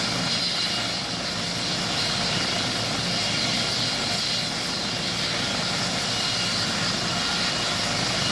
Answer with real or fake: real